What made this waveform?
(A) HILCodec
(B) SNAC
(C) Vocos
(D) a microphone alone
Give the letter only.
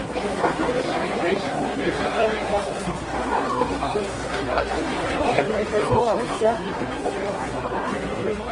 B